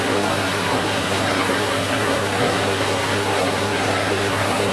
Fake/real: fake